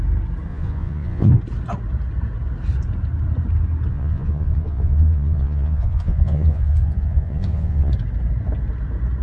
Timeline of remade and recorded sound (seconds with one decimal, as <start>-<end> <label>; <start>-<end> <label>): 0.0-0.5 recorded; 0.5-1.3 remade; 1.3-3.9 recorded; 3.9-7.9 remade; 7.9-9.2 recorded

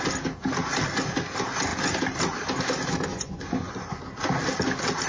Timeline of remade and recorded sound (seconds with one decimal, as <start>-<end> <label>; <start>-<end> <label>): 0.0-3.1 recorded; 3.1-4.0 remade; 4.0-5.1 recorded

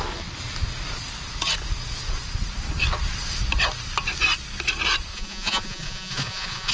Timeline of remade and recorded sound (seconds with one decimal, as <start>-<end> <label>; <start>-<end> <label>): 0.0-5.1 recorded; 5.1-6.7 remade

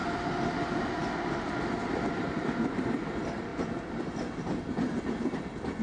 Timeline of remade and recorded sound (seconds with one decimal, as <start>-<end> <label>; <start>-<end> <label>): 0.0-5.8 recorded

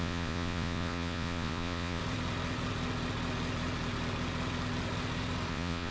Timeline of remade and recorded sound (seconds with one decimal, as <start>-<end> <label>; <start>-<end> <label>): 0.0-2.0 remade; 2.0-5.5 recorded; 5.5-5.9 remade

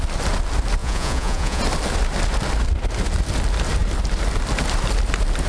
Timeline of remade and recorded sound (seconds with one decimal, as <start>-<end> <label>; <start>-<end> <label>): 0.0-0.8 recorded; 0.8-1.6 remade; 1.6-5.5 recorded